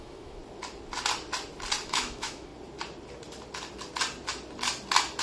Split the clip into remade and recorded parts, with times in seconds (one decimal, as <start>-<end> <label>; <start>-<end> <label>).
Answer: 0.0-0.4 remade; 0.4-1.8 recorded; 1.8-2.5 remade; 2.5-5.2 recorded